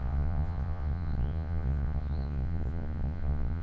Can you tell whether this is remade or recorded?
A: remade